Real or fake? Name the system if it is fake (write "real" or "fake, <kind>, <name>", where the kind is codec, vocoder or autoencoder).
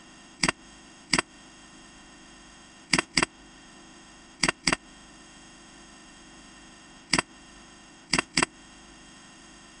fake, autoencoder, DAC-VAE